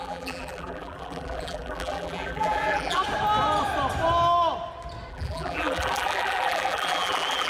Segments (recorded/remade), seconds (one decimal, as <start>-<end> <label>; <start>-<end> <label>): 0.0-3.0 remade; 3.0-5.1 recorded; 5.1-7.5 remade